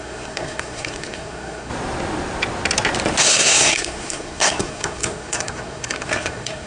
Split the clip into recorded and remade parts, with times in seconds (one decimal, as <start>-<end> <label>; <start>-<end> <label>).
0.0-1.7 remade; 1.7-3.2 recorded; 3.2-6.7 remade